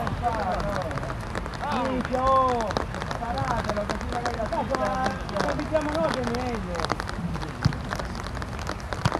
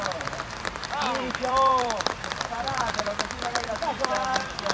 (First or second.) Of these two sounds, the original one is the first